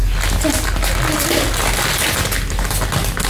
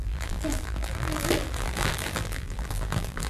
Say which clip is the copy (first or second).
second